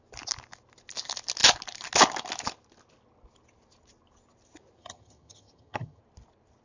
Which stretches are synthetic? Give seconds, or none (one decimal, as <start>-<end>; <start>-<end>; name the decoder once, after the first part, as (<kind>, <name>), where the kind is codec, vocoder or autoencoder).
4.8-6.0 (vocoder, HiFi-GAN)